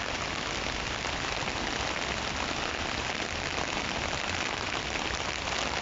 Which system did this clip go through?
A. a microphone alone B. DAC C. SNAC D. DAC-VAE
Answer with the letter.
A